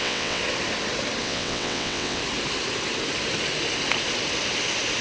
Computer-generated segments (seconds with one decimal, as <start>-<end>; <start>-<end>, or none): 0.0-0.4; 1.2-2.2